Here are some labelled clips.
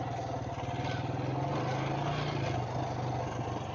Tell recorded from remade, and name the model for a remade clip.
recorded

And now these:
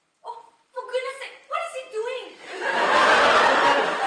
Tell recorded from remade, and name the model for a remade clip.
recorded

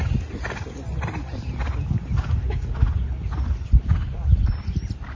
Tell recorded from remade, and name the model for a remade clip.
recorded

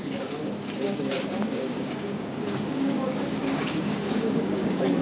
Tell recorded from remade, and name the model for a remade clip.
remade, codec, DAC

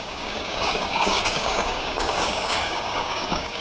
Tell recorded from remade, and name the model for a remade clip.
remade, codec, DAC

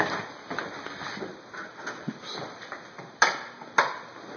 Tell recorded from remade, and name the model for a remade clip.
recorded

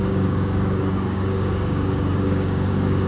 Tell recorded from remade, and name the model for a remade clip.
remade, codec, DAC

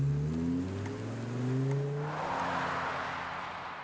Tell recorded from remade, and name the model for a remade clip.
recorded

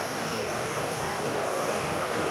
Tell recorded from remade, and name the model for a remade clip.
remade, codec, DAC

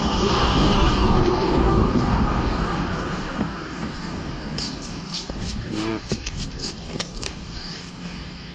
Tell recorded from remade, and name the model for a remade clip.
remade, codec, DAC